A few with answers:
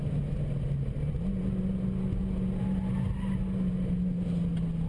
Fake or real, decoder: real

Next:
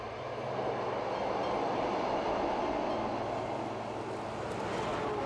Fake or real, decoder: real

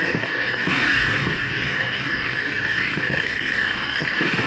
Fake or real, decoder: fake, codec, DAC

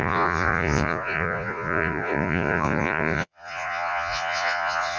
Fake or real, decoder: fake, vocoder, Vocos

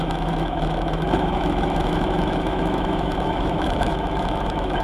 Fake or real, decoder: fake, autoencoder, DAC-VAE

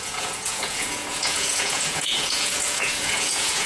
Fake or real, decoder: fake, vocoder, Vocos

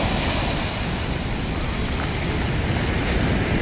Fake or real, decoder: real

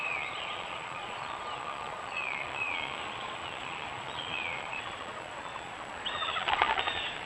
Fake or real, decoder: fake, vocoder, Vocos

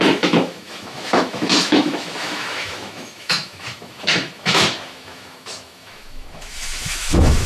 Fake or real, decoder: fake, autoencoder, DAC-VAE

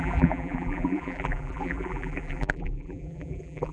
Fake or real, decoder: fake, vocoder, BigVGAN v2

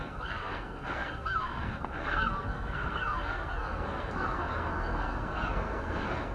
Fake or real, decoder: fake, codec, SNAC